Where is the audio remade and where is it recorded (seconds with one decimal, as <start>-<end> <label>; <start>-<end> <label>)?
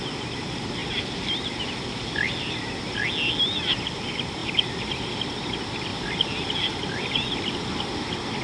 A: 0.0-4.4 recorded; 4.4-5.1 remade; 5.1-8.4 recorded